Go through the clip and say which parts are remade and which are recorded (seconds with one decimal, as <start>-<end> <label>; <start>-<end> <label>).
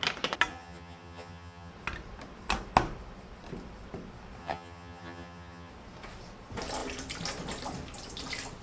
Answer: 0.0-0.5 recorded; 0.5-1.7 remade; 1.7-4.4 recorded; 4.4-5.7 remade; 5.7-8.6 recorded